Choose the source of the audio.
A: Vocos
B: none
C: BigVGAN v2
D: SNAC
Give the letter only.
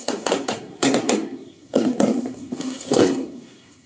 D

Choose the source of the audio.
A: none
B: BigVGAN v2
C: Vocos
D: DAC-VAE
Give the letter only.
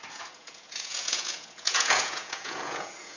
C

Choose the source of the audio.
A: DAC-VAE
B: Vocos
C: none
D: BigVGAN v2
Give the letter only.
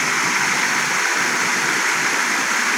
C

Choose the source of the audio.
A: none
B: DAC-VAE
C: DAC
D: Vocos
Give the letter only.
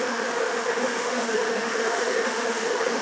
B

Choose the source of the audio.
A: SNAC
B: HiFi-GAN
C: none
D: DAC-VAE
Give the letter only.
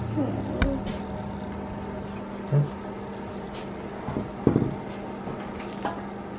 C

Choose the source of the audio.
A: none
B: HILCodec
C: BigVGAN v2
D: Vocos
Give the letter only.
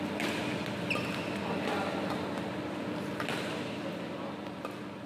A